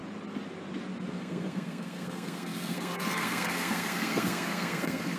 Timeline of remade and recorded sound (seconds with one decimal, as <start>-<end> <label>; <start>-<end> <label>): 0.0-1.1 recorded; 1.1-5.2 remade